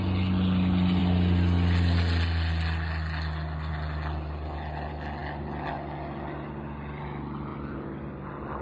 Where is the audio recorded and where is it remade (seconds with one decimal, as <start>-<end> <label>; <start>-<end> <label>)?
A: 0.0-8.6 recorded